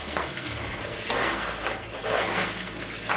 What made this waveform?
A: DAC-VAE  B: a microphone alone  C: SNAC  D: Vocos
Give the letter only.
C